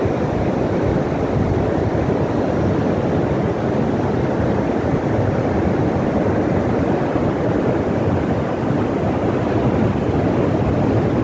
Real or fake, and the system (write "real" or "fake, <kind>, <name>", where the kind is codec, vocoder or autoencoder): real